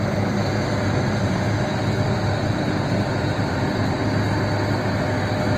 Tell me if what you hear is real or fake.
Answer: real